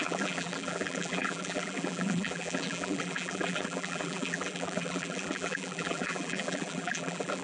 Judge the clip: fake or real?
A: fake